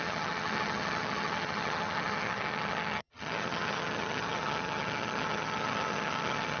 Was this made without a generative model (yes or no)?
no